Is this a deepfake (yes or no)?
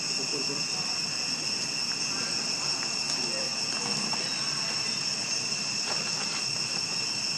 no